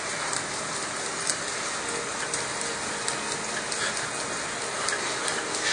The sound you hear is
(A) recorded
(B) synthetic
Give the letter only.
A